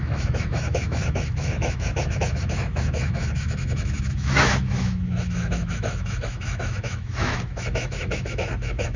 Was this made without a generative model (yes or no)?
no